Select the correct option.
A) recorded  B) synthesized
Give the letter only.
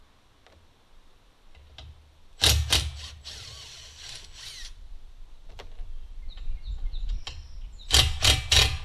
A